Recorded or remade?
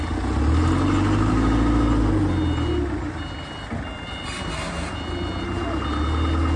recorded